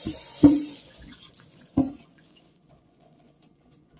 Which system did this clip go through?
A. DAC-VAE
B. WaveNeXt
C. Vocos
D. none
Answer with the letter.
C